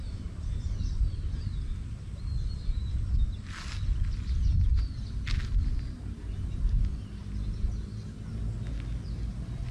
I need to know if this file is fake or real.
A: real